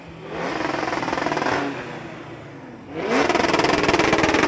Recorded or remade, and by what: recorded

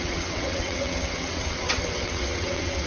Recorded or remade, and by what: remade, vocoder, WaveNeXt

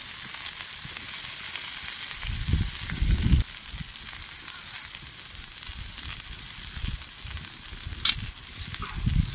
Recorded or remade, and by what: recorded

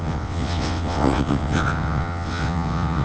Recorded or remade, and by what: remade, vocoder, WaveNeXt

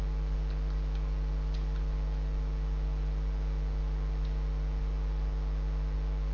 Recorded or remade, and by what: recorded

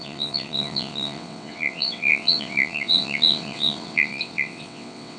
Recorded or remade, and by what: remade, vocoder, WaveNeXt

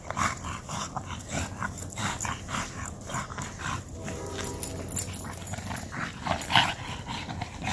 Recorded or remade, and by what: recorded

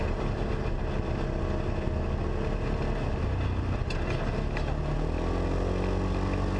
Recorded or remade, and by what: recorded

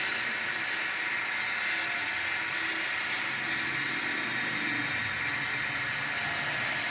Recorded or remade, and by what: recorded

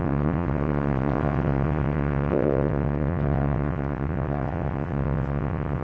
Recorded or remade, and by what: remade, vocoder, WaveNeXt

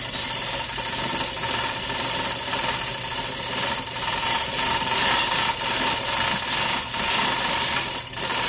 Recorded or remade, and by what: recorded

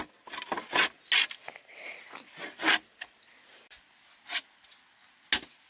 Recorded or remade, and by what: recorded